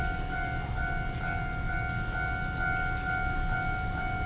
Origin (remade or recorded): recorded